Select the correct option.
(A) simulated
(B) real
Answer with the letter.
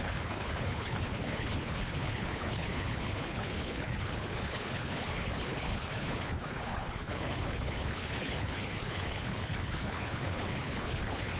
A